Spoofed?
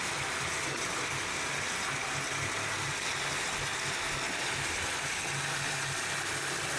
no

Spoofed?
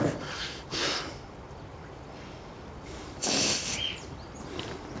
no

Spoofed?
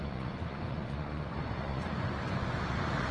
yes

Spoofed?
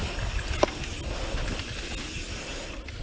no